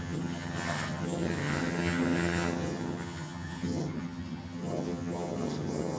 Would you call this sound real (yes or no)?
no